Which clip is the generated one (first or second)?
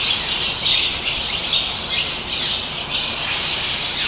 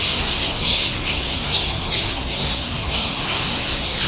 second